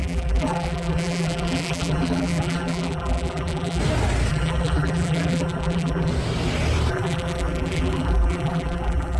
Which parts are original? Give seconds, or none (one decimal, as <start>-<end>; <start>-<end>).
3.8-4.3; 6.1-6.9